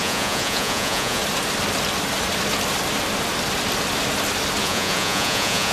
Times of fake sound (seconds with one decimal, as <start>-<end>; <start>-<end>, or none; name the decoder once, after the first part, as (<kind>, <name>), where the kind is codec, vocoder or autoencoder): 0.0-1.2 (vocoder, Vocos); 4.6-5.7